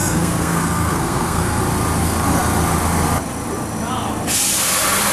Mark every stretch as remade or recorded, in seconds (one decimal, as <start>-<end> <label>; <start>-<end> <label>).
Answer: 0.0-1.6 remade; 1.6-5.1 recorded